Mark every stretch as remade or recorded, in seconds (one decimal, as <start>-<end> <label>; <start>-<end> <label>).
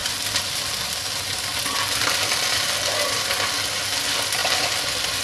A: 0.0-3.1 remade; 3.1-5.2 recorded